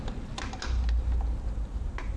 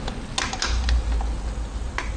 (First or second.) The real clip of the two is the second